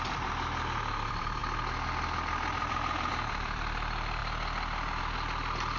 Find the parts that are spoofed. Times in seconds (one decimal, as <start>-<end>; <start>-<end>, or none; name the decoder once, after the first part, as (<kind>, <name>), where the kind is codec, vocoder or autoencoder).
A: 0.0-4.2 (vocoder, BigVGAN v2); 5.0-5.8